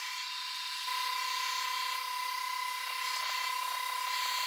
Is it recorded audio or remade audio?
recorded